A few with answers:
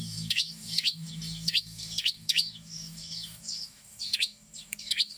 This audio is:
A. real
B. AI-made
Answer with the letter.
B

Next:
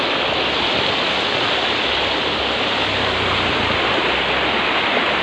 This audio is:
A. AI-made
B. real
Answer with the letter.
B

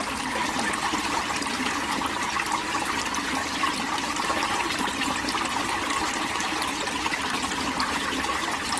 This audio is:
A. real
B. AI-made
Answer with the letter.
A